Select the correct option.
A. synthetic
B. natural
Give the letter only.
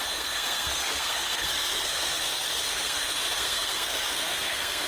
A